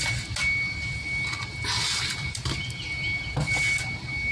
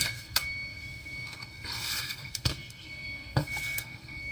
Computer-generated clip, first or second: second